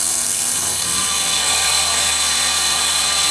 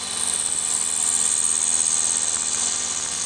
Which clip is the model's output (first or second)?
first